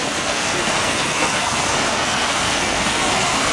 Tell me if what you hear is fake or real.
fake